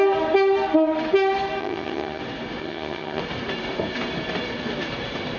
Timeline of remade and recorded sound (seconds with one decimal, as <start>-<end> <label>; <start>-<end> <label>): 0.0-1.6 recorded; 1.6-2.2 remade; 2.2-2.6 recorded; 2.6-3.2 remade; 3.2-5.4 recorded